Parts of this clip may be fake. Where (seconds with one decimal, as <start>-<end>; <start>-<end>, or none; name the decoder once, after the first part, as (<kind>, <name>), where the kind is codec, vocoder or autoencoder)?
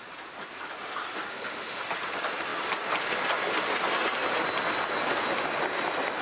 1.3-1.8 (autoencoder, DAC-VAE)